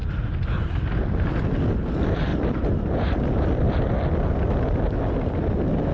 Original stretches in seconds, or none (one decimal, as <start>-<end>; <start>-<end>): 0.0-2.3; 3.8-5.9

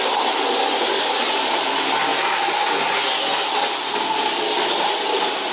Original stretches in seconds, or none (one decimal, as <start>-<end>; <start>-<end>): 0.0-2.1; 2.7-5.5